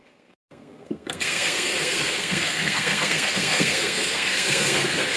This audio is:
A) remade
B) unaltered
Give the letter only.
A